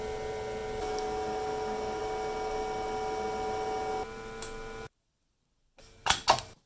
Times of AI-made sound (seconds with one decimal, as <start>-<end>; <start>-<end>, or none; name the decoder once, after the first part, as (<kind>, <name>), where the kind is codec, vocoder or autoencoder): none